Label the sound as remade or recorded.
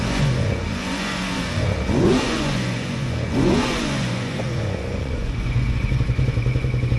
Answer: remade